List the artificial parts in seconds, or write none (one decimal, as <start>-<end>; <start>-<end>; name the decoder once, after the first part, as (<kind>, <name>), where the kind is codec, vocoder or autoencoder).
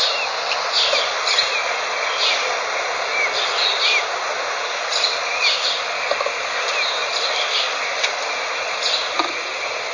none